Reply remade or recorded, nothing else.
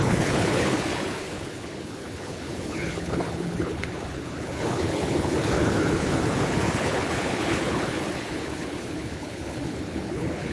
remade